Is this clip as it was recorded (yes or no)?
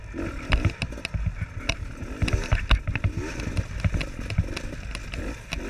yes